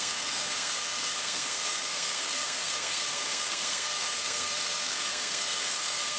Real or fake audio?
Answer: fake